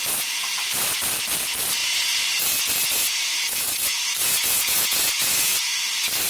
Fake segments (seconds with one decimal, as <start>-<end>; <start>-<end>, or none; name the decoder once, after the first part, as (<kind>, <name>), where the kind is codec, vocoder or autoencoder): 4.2-5.6 (vocoder, Vocos)